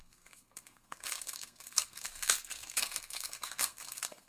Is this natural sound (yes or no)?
no